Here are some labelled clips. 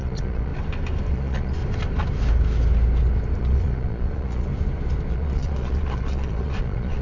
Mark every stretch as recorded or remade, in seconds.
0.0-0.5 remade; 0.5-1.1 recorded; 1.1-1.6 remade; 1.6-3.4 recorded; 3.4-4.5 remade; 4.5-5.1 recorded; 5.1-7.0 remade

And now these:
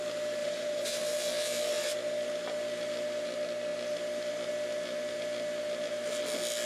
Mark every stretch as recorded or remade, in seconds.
0.0-0.4 recorded; 0.4-1.0 remade; 1.0-6.7 recorded